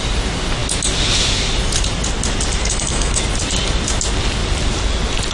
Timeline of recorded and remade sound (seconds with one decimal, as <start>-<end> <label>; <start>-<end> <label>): 0.0-2.6 recorded; 2.6-3.2 remade; 3.2-5.3 recorded